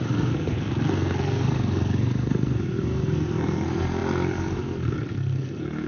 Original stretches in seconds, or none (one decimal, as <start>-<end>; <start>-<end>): none